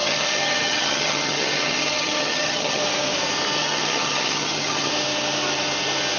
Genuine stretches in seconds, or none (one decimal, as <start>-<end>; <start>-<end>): 2.8-3.6; 4.9-6.2